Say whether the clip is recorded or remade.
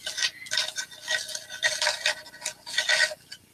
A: recorded